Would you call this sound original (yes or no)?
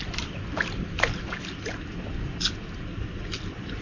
yes